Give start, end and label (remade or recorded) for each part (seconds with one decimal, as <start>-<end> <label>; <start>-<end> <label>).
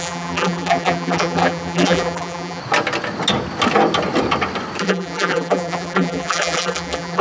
0.0-2.6 remade; 2.6-4.8 recorded; 4.8-7.2 remade